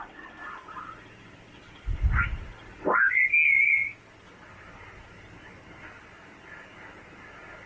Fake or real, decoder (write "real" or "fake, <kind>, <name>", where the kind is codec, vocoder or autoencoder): real